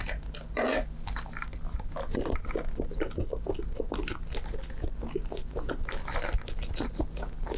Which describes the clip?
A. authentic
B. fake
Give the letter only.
A